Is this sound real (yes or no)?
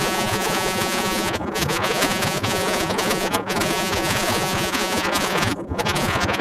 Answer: no